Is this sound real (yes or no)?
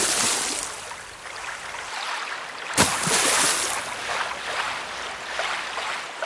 yes